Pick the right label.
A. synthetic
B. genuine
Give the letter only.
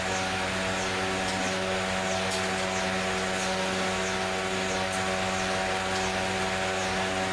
B